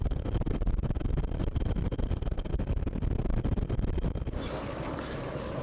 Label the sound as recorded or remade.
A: recorded